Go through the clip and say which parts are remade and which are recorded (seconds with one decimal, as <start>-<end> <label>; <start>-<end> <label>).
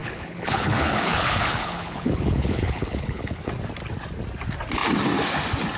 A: 0.0-3.5 remade; 3.5-5.8 recorded